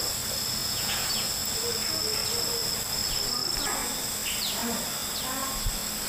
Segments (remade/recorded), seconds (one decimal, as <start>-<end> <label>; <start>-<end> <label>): 0.0-0.6 recorded; 0.6-1.3 remade; 1.3-6.1 recorded